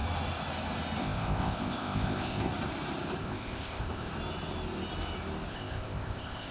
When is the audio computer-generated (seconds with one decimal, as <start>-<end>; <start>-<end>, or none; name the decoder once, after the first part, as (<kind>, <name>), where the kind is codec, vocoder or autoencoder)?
1.0-2.5 (codec, ZipCodec); 3.2-4.1; 5.5-6.5